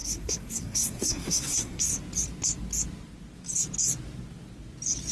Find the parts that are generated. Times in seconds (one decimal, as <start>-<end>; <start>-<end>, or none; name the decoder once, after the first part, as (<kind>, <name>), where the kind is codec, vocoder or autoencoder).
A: 0.0-1.9 (codec, SNAC)